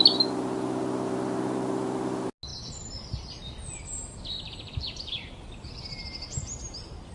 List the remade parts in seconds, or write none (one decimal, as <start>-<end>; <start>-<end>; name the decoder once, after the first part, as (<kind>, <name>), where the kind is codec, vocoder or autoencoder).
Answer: 2.5-5.3 (vocoder, BigVGAN v2)